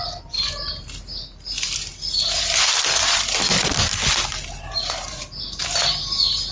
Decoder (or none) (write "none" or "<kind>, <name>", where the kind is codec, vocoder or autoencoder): none